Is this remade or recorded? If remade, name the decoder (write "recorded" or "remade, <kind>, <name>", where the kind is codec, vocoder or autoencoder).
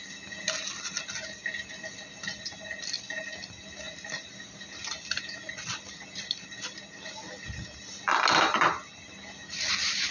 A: recorded